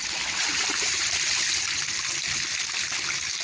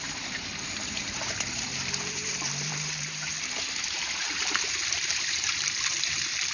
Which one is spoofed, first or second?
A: second